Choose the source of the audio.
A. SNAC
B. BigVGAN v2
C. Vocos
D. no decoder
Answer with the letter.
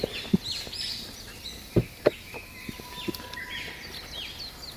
D